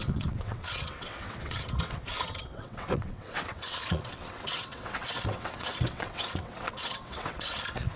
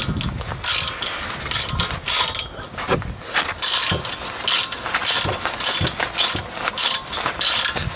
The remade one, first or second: first